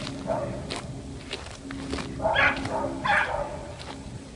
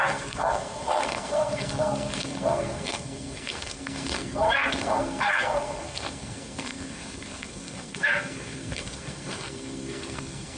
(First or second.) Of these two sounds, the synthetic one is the second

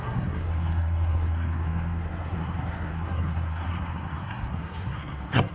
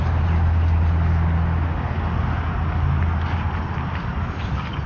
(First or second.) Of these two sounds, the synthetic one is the first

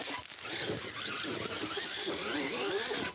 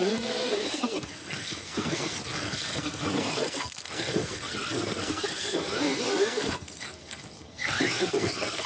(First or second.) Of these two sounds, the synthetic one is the second